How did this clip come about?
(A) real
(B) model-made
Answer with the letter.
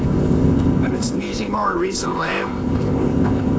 B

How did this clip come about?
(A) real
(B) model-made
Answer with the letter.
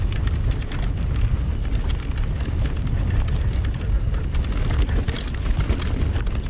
A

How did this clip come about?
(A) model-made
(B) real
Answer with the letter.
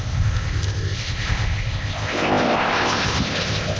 A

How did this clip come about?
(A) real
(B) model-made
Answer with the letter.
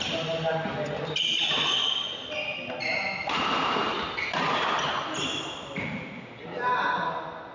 A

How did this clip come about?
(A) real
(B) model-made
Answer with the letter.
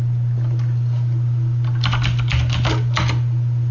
A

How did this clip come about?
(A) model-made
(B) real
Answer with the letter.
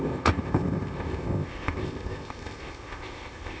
A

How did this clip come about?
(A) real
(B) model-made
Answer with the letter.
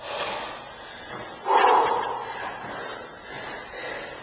A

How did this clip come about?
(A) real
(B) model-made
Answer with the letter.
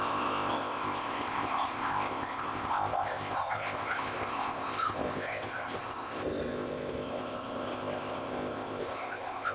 B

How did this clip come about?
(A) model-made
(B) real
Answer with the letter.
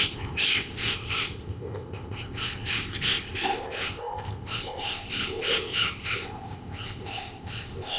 A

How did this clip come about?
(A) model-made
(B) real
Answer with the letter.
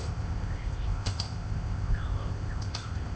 A